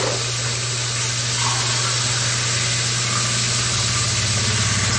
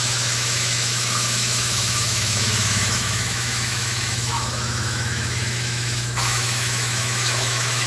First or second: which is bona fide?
first